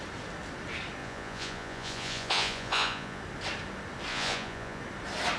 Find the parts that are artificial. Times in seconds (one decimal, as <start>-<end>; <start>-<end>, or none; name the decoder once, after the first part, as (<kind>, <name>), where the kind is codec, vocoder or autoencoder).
1.0-3.2 (vocoder, Vocos); 4.1-4.8